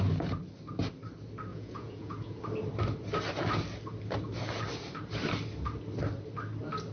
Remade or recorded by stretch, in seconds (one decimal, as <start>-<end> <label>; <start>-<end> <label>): 0.0-1.5 recorded; 1.5-2.4 remade; 2.4-6.9 recorded